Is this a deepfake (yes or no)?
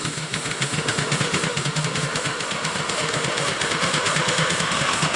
yes